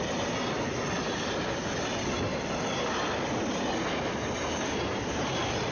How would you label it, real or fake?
real